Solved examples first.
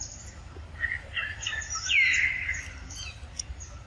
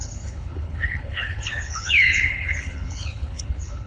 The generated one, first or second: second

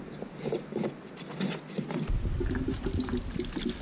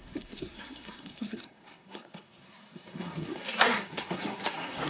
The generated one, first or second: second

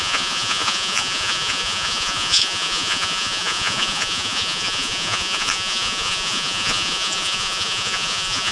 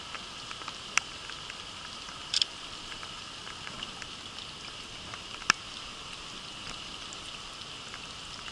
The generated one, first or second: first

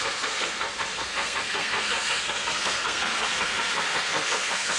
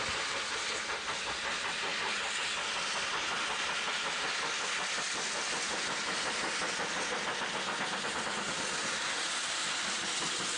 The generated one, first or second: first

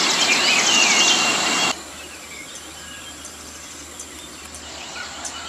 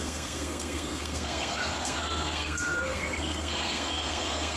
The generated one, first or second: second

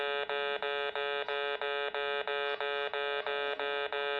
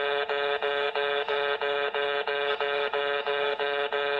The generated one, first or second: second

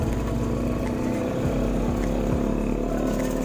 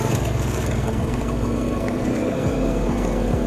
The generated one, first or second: second